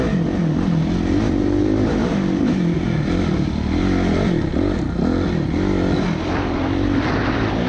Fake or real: real